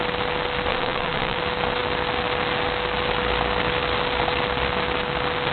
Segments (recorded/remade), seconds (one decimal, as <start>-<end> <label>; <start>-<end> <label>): 0.0-0.7 recorded; 0.7-1.4 remade; 1.4-5.5 recorded